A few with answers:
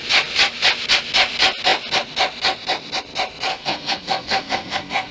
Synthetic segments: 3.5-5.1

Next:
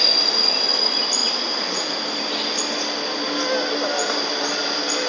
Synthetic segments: none

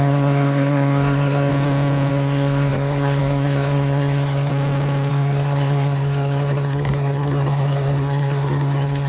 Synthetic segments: 0.0-1.5; 2.1-4.5; 5.1-9.1

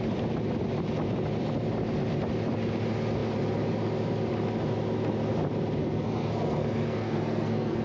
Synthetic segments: 5.8-7.8

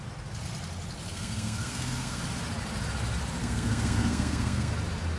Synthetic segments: 1.1-2.2; 3.4-4.7

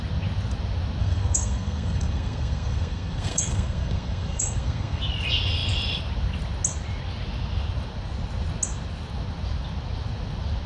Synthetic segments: 1.0-5.0